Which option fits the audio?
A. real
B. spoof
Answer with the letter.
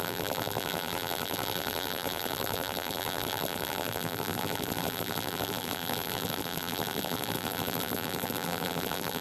B